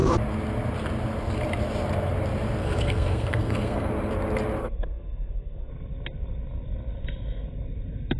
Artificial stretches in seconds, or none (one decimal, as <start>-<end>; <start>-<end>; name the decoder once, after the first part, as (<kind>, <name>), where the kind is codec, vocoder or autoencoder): 2.6-3.9 (codec, SNAC); 4.6-5.7

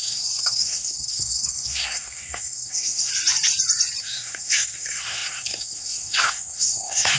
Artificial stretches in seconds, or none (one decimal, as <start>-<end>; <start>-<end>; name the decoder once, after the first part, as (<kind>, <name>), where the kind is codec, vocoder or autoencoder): 0.0-3.1 (codec, SNAC); 4.0-7.2

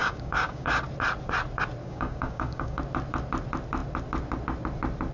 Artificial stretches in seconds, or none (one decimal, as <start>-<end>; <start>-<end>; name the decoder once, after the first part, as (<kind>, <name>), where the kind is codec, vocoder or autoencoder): 0.0-0.8 (codec, DAC); 1.8-2.8

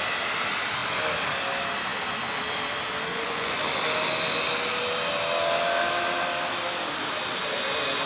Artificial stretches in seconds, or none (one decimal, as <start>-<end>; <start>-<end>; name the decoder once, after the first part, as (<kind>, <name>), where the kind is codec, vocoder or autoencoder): 3.1-3.6 (vocoder, Vocos)

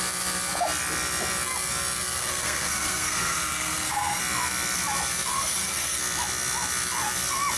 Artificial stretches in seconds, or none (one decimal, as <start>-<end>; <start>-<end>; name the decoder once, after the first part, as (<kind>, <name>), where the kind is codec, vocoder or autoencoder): 2.2-4.2 (codec, SNAC); 5.3-6.0

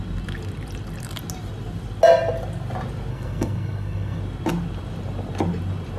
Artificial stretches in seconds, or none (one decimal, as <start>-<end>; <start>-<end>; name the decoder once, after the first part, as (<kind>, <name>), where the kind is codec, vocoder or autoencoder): 3.1-4.2 (codec, SNAC)

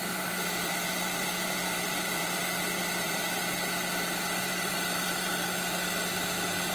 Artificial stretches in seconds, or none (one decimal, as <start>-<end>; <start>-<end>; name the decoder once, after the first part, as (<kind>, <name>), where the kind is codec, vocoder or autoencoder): 0.0-2.4 (vocoder, BigVGAN v2); 3.0-3.4; 4.4-5.3